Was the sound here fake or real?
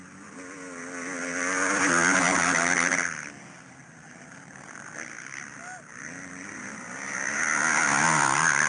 real